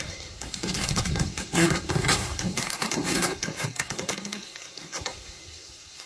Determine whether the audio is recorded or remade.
remade